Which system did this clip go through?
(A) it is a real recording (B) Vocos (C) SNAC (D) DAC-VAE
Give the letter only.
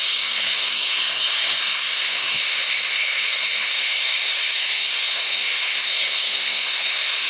C